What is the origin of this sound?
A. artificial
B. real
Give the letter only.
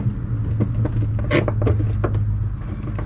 B